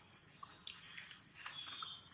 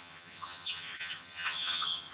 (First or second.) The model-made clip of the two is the second